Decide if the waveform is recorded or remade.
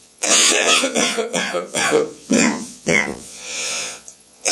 remade